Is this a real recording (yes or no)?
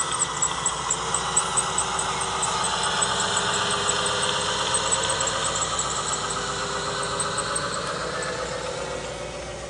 yes